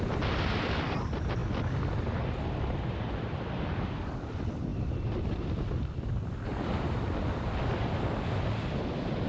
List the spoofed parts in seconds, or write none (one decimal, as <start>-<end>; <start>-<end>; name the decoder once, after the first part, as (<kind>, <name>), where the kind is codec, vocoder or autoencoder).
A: 0.0-1.4 (vocoder, BigVGAN v2); 2.0-6.5; 7.7-9.3